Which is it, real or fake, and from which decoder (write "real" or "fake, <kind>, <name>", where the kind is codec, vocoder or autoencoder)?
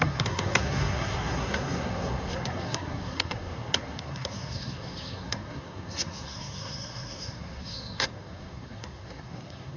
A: fake, codec, SNAC